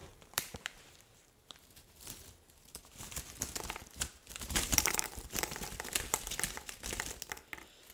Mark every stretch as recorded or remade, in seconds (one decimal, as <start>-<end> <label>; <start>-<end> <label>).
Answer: 0.0-3.2 remade; 3.2-3.8 recorded; 3.8-5.7 remade; 5.7-7.9 recorded